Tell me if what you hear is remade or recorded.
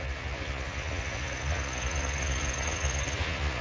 remade